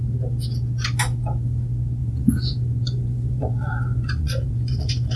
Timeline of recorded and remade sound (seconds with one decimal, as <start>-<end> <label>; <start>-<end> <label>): 0.0-2.0 recorded; 2.0-5.2 remade